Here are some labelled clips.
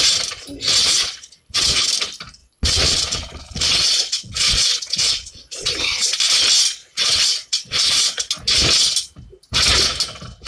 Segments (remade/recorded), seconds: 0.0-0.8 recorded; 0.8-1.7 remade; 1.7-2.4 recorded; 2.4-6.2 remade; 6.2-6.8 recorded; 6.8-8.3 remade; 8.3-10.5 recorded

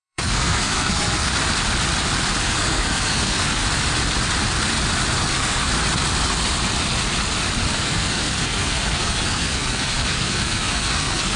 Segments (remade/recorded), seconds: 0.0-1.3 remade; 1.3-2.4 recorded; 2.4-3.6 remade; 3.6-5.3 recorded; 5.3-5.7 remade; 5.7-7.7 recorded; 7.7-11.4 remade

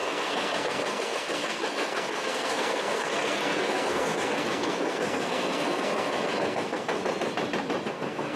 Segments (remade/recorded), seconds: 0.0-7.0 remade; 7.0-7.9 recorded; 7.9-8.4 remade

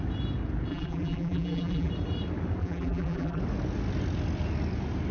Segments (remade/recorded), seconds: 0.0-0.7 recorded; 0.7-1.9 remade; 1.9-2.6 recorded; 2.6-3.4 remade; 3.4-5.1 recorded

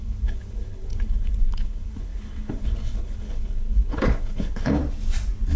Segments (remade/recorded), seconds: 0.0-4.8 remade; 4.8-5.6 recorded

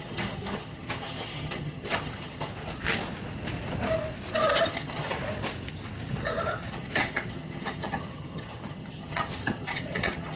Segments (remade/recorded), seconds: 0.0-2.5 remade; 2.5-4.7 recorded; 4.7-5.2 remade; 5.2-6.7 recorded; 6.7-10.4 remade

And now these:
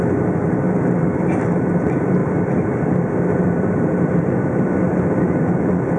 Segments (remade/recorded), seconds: 0.0-6.0 remade

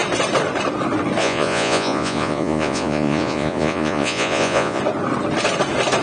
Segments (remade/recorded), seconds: 0.0-1.2 recorded; 1.2-4.8 remade; 4.8-6.0 recorded